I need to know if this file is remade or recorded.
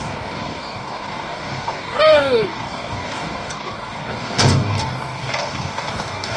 remade